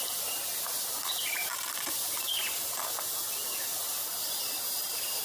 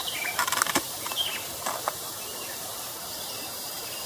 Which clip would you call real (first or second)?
first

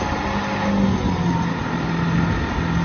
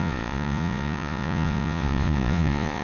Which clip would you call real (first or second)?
first